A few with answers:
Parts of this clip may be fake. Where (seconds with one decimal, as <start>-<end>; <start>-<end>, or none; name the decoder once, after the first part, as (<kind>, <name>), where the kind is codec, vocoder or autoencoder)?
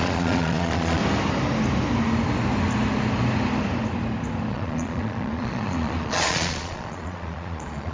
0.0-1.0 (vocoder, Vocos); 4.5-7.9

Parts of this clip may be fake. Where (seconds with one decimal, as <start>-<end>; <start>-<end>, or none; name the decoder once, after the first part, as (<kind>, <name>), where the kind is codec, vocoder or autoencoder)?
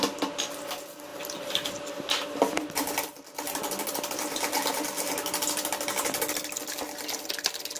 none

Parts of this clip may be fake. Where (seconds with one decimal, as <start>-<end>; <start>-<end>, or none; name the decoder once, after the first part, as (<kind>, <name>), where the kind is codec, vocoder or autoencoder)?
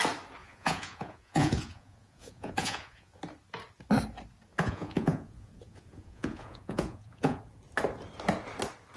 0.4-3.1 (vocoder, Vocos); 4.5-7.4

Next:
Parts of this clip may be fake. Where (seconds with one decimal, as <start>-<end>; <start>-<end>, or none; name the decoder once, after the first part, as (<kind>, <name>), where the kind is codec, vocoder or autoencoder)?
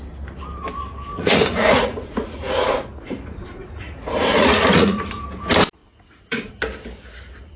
1.1-5.1 (vocoder, Vocos); 5.8-6.5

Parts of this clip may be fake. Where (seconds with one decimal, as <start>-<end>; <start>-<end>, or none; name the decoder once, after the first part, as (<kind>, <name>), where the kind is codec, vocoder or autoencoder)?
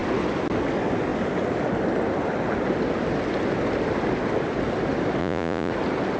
5.2-5.7 (vocoder, Vocos)